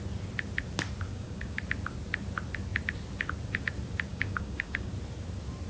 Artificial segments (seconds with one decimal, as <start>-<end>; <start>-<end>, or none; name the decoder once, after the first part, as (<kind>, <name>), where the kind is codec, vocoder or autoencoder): 1.1-1.6 (codec, DAC); 4.1-4.9